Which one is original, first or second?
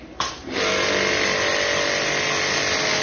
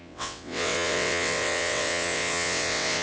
first